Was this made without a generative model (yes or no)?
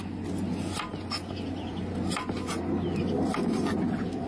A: yes